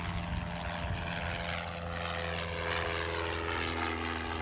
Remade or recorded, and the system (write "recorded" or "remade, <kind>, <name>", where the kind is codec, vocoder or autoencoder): recorded